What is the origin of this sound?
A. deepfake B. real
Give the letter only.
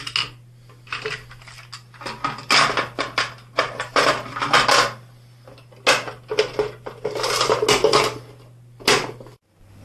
B